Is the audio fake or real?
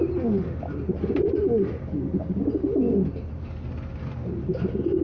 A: real